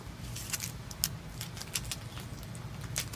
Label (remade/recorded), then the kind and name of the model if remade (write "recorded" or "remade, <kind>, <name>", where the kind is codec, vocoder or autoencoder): recorded